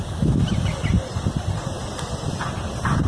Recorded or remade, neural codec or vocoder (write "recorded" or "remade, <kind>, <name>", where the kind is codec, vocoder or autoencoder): recorded